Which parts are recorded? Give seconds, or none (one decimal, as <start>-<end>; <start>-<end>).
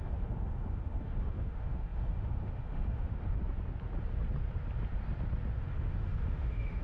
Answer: 3.4-5.6